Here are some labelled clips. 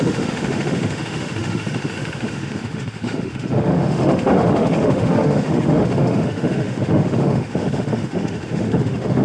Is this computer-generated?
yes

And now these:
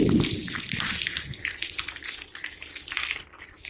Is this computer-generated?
no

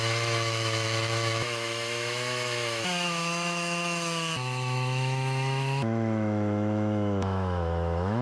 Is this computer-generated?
yes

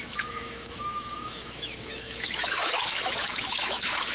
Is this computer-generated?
yes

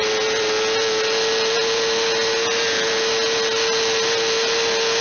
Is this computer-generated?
no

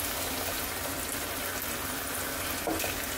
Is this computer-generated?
no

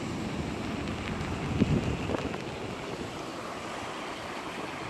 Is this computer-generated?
no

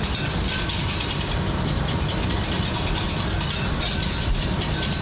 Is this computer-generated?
no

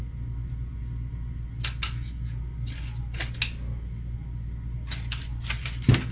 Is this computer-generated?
no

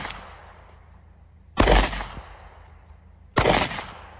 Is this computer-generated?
no